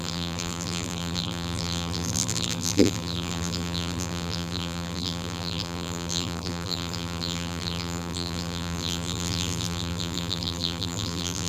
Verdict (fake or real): fake